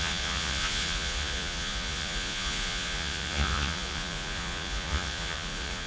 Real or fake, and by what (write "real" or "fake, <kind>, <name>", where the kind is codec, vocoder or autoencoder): fake, vocoder, Vocos